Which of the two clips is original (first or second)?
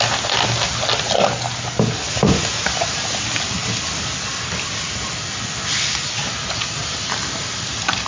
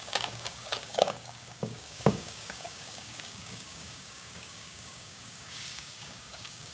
first